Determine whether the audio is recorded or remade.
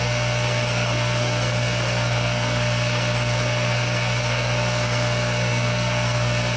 remade